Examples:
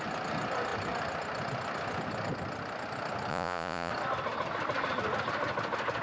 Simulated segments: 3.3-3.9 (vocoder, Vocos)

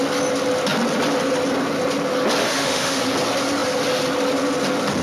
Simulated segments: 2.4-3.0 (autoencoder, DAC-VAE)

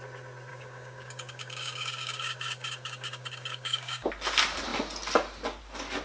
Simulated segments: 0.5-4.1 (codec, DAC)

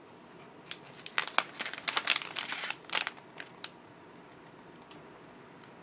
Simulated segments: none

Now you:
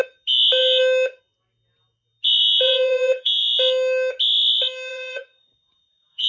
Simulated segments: 2.4-3.4 (vocoder, Vocos); 4.9-6.3

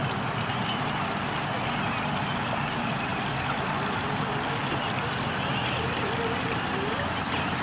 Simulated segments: none

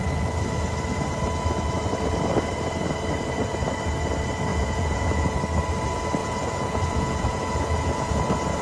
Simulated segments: 4.5-5.4 (vocoder, Vocos); 6.2-8.2

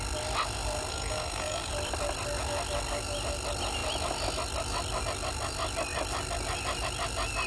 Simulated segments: 0.9-1.7 (codec, SNAC)